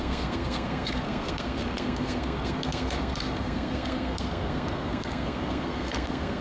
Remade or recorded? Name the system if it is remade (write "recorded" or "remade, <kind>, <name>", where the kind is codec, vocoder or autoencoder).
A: remade, codec, SNAC